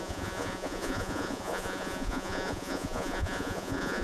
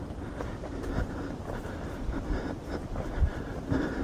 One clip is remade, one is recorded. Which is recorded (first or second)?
second